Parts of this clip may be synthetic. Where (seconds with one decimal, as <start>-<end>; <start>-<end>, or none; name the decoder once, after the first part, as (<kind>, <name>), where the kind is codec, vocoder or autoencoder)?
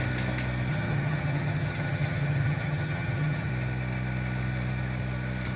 0.7-3.5 (vocoder, HiFi-GAN)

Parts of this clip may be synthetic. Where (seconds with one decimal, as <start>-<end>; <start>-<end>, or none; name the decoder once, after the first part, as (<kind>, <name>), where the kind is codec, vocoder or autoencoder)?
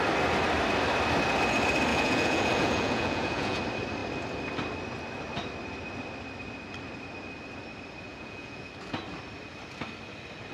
1.9-3.6 (vocoder, Vocos); 8.1-8.7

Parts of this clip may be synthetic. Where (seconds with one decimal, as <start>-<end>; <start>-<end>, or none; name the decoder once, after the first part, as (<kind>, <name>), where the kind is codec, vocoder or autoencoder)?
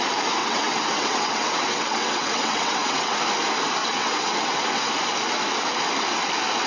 0.4-3.2 (vocoder, WaveNeXt); 3.8-4.9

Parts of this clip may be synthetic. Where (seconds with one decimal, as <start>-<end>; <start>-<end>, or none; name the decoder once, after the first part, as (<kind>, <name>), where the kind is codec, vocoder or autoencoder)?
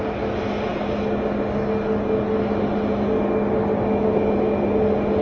none